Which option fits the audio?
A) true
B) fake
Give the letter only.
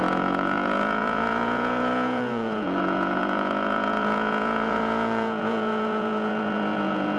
B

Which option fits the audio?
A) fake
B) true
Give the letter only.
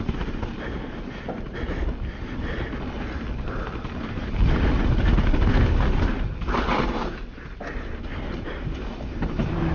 B